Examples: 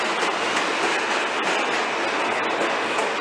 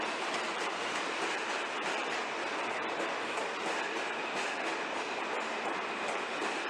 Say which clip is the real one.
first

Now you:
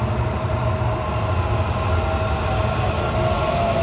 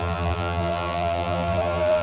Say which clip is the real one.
first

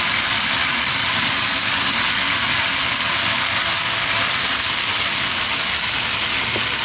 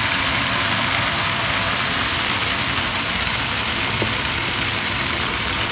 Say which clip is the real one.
first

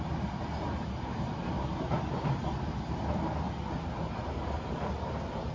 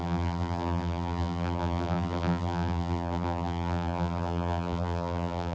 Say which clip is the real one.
first